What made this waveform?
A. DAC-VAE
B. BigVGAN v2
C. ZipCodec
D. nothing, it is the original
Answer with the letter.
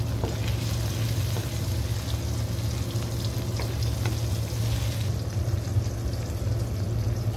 D